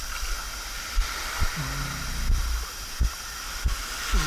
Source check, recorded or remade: recorded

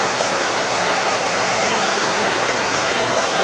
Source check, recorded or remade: remade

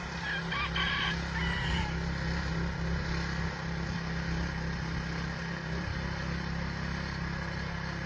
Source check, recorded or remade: recorded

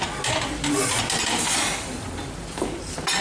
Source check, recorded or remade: recorded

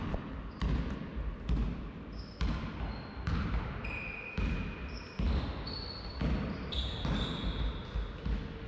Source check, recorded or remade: recorded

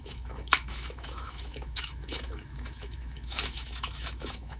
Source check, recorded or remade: remade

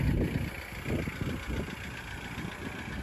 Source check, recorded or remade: recorded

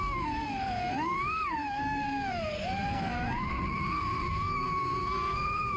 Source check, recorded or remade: remade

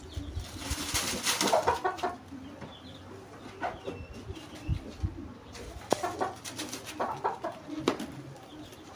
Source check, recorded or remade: recorded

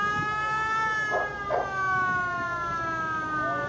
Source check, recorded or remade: recorded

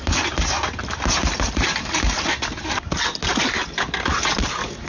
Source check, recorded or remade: recorded